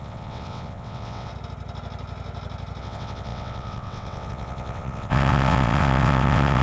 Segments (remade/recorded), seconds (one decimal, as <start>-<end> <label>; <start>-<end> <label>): 0.0-1.3 remade; 1.3-2.8 recorded; 2.8-6.6 remade